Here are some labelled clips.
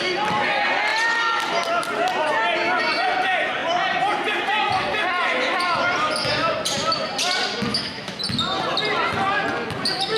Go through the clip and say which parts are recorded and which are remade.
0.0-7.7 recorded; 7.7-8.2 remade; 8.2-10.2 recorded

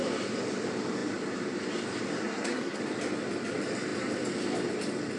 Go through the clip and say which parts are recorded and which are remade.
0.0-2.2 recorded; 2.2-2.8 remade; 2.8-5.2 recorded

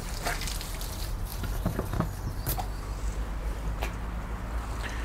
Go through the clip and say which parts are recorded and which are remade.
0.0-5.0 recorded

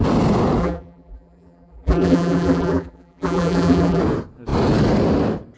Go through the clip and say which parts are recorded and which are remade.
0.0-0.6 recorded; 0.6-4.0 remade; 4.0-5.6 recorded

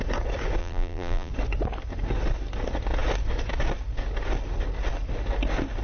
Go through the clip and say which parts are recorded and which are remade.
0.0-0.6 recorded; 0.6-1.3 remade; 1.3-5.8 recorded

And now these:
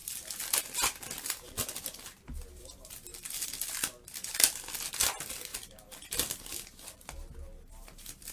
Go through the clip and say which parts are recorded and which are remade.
0.0-8.3 recorded

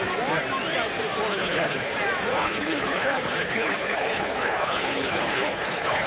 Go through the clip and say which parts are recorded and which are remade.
0.0-1.3 recorded; 1.3-1.9 remade; 1.9-2.3 recorded; 2.3-6.1 remade